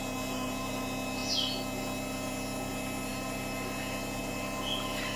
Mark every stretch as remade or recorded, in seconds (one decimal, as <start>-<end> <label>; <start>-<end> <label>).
0.0-5.2 recorded